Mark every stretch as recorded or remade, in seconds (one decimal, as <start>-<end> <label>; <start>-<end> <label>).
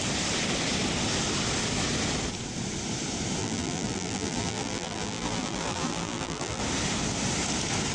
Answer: 0.0-3.4 recorded; 3.4-6.6 remade; 6.6-7.9 recorded